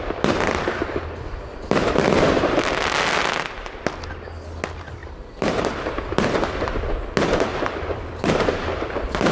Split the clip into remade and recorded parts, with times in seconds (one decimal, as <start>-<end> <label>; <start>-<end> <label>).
0.0-5.0 recorded; 5.0-5.9 remade; 5.9-7.5 recorded; 7.5-9.3 remade